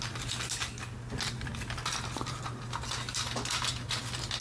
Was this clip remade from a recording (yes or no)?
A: no